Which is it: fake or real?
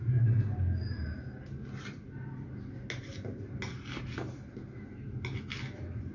real